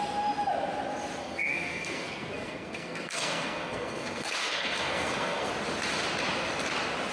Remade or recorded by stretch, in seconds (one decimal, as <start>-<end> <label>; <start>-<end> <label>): 0.0-1.2 recorded; 1.2-5.5 remade; 5.5-7.1 recorded